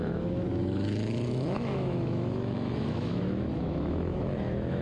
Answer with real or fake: fake